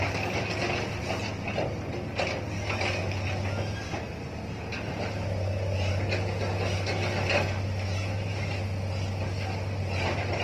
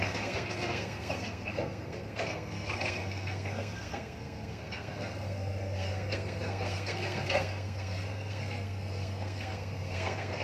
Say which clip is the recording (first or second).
first